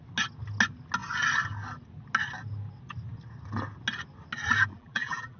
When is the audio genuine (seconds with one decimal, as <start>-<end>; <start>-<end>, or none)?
0.0-4.7